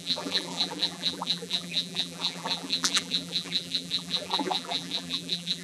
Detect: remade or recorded remade